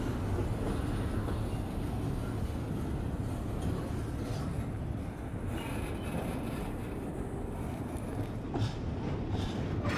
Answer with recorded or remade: recorded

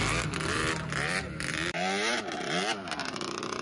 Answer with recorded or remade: remade